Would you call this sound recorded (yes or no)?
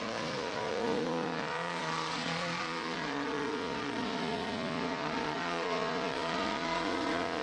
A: no